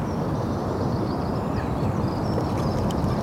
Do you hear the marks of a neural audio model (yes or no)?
no